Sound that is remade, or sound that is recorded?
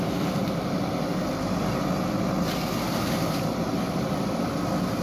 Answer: recorded